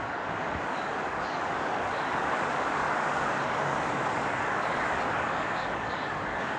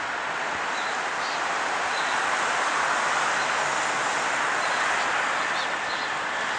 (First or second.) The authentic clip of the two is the second